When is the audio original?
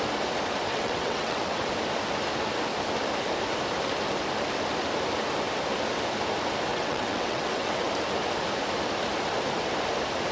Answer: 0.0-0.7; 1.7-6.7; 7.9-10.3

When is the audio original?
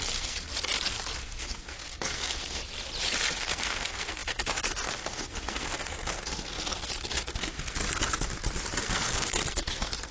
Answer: 0.5-1.2; 2.6-3.4; 7.8-8.8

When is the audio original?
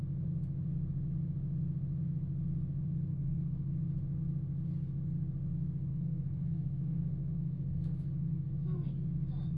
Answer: 0.0-3.1; 3.7-5.9; 8.9-9.6